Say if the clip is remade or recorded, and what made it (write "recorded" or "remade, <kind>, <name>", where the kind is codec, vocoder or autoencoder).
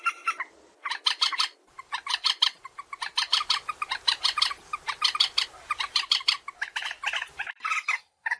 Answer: recorded